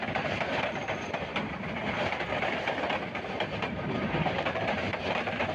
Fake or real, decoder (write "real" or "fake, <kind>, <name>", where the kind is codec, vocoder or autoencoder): fake, vocoder, BigVGAN v2